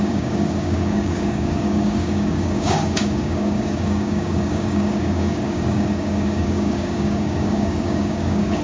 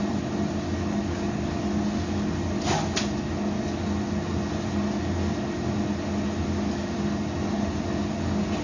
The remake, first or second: first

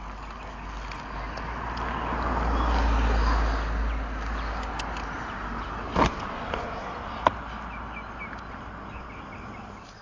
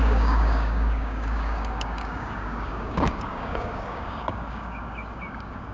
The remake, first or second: second